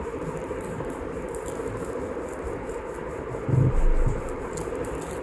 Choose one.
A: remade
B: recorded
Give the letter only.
B